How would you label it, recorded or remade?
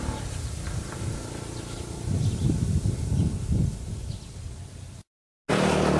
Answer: recorded